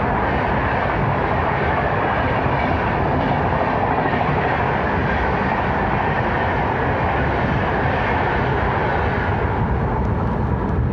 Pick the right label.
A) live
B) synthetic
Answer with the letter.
A